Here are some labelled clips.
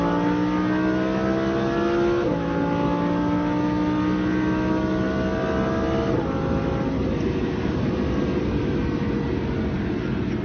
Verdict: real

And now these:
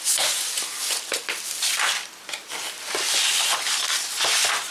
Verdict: real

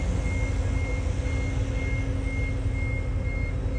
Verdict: real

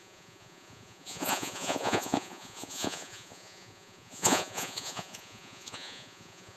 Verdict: fake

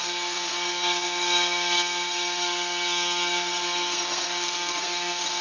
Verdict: fake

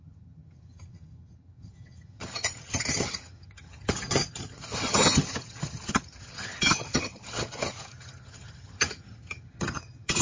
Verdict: fake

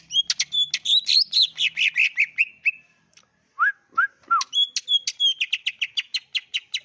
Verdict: real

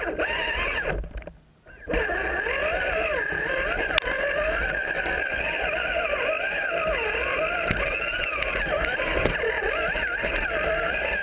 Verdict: real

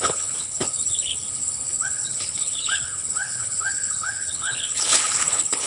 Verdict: fake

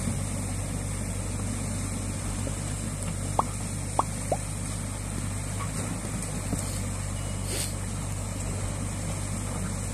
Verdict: real